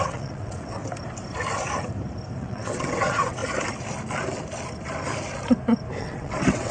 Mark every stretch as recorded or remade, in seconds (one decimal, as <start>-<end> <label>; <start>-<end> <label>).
0.0-0.8 remade; 0.8-2.4 recorded; 2.4-3.4 remade; 3.4-6.0 recorded; 6.0-6.7 remade